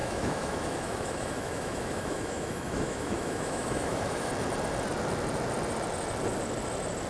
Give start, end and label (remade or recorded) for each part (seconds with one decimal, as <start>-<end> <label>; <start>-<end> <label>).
0.0-4.3 remade; 4.3-7.1 recorded

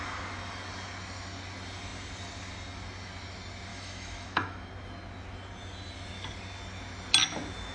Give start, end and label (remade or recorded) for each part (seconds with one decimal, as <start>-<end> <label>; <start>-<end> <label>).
0.0-3.7 recorded; 3.7-4.7 remade; 4.7-7.7 recorded

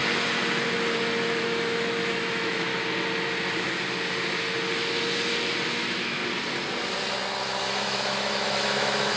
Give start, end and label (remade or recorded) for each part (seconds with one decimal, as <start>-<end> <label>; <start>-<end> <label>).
0.0-1.4 recorded; 1.4-2.7 remade; 2.7-5.7 recorded; 5.7-6.2 remade; 6.2-7.6 recorded; 7.6-9.2 remade

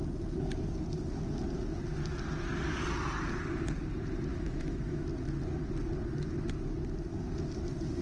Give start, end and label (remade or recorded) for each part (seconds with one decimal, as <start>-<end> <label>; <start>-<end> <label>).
0.0-4.3 recorded; 4.3-5.1 remade; 5.1-8.0 recorded

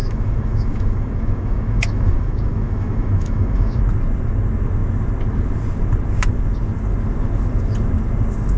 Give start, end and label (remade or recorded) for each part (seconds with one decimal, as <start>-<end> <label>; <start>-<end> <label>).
0.0-3.8 remade; 3.8-8.6 recorded

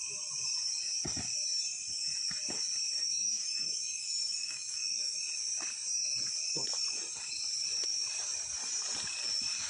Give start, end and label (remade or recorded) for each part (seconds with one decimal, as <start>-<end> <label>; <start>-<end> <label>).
0.0-3.0 recorded; 3.0-5.2 remade; 5.2-9.7 recorded